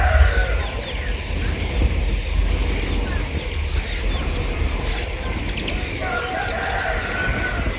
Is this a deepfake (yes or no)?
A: no